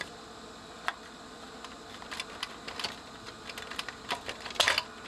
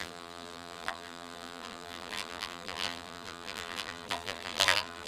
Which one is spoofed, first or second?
second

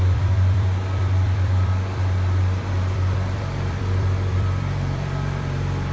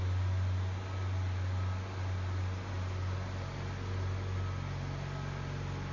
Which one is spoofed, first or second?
first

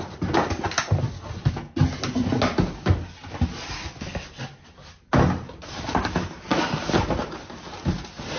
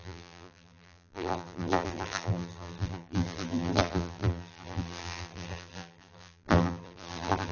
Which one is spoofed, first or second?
second